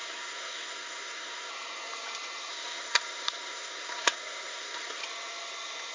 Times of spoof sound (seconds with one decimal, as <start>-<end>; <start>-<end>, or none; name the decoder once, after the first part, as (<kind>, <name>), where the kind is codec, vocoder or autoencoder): 0.0-1.5 (codec, SNAC); 2.5-5.0